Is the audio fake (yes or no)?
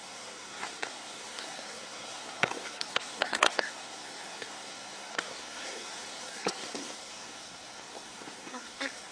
yes